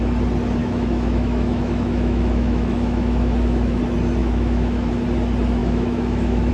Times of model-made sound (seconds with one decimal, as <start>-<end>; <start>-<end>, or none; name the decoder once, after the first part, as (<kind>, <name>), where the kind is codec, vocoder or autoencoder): 0.6-3.8 (autoencoder, DAC-VAE); 4.2-4.9; 5.6-6.5